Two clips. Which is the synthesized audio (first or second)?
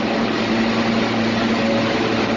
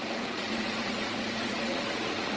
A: second